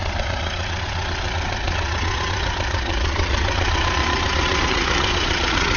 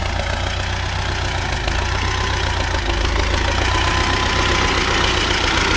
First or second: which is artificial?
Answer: first